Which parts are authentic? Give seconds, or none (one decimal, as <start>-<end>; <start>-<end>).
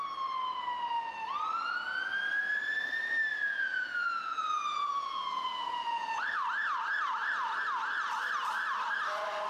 0.0-3.3; 6.2-9.5